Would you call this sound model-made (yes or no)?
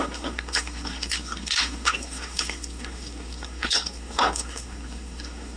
yes